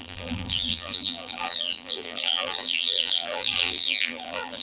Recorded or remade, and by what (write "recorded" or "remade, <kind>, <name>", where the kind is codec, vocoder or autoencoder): remade, vocoder, BigVGAN v2